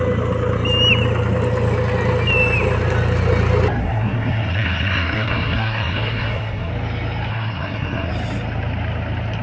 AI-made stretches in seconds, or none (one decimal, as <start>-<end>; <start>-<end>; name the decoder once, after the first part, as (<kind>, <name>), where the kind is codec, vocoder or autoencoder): 3.8-6.7 (codec, SNAC); 7.3-8.1